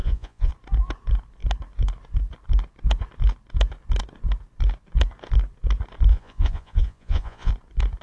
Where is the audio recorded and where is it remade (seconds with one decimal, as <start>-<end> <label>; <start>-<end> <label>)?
0.0-0.5 remade; 0.5-6.1 recorded; 6.1-7.5 remade; 7.5-8.0 recorded